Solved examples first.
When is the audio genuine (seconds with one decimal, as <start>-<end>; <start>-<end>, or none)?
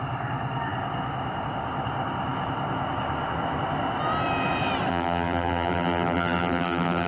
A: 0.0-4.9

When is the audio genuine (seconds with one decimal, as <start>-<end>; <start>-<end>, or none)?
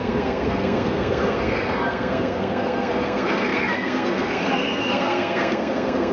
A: none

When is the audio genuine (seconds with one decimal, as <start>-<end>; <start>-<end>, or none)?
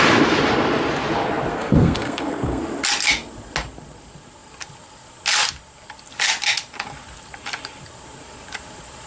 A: 0.0-1.5; 2.6-9.1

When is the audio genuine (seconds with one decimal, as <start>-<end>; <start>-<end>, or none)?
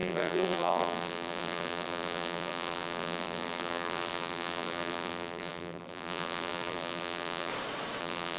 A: 7.5-8.0